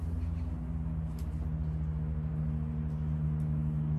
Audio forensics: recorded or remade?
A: recorded